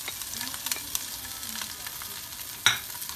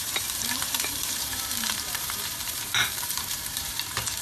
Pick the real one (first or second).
first